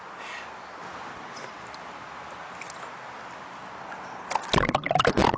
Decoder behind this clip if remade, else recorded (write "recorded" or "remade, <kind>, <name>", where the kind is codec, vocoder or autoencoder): recorded